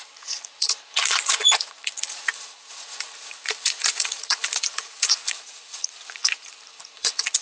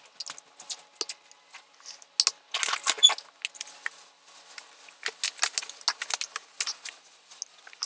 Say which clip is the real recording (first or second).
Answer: second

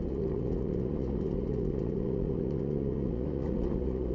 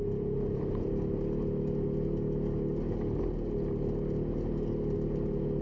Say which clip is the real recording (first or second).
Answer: second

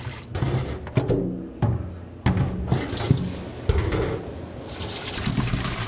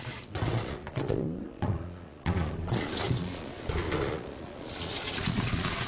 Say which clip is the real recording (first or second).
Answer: first